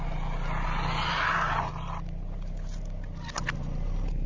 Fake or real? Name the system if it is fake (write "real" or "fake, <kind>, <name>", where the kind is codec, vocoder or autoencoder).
real